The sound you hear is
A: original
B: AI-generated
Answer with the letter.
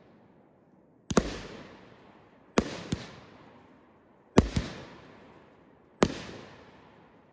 A